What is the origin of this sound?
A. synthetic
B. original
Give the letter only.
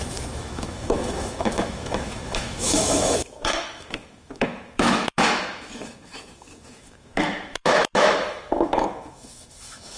A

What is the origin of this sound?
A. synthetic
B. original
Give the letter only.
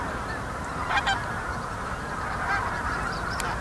B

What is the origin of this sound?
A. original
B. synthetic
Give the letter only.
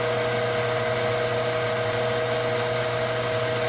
A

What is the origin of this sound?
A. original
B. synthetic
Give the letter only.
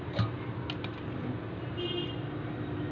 A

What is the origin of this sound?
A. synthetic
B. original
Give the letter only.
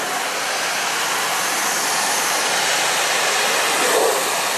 B